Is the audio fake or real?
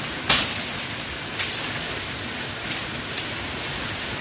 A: real